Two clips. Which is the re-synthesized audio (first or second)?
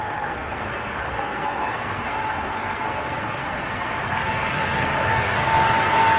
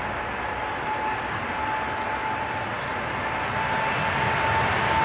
first